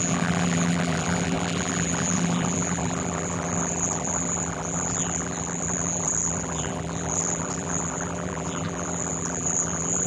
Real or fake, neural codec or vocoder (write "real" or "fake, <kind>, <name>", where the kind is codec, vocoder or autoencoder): fake, vocoder, BigVGAN v2